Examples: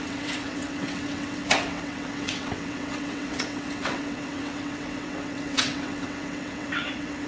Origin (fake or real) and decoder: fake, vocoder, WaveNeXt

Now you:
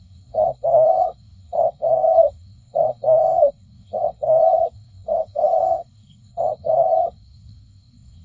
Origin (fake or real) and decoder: fake, codec, SNAC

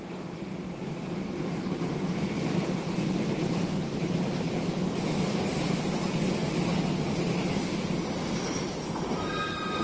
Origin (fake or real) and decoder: real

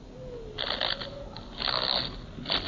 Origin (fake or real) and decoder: real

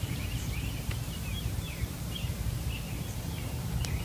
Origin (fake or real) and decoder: fake, vocoder, BigVGAN v2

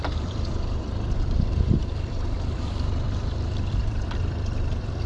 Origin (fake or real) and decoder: fake, vocoder, BigVGAN v2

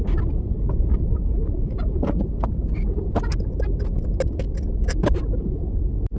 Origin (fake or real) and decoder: real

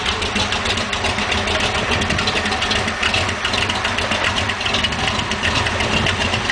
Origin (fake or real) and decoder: fake, vocoder, BigVGAN v2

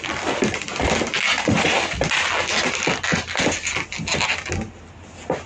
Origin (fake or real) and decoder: real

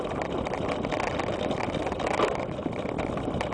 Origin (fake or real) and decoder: real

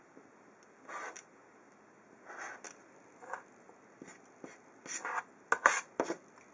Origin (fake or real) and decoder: real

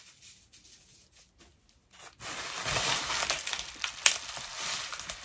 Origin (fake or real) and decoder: real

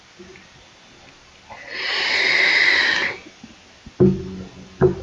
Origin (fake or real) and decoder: real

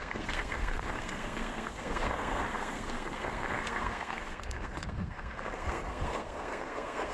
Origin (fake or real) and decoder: fake, codec, SNAC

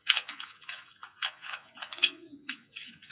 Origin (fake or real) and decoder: fake, vocoder, Vocos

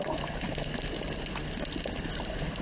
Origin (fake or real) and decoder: real